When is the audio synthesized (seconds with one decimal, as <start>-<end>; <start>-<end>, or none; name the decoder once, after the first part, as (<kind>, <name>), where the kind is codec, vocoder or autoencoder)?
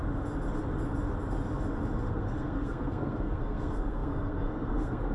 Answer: 2.0-5.1 (codec, SNAC)